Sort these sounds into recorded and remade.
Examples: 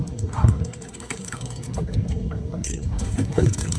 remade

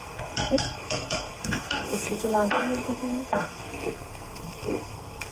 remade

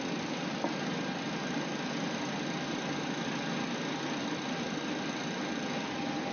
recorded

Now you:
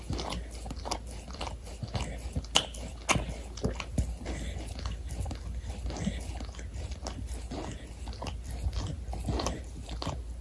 recorded